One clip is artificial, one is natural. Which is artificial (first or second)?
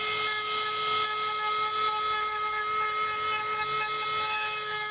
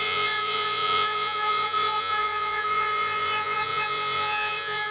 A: second